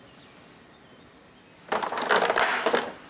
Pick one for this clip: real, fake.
real